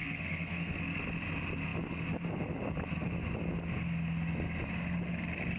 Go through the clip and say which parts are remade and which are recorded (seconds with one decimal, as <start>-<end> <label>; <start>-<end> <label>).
0.0-0.8 remade; 0.8-5.6 recorded